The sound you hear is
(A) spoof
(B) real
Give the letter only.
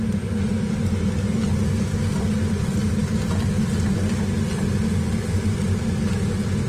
B